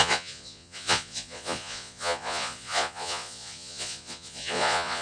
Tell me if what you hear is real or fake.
fake